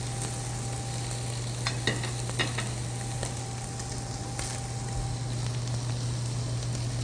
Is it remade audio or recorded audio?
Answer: recorded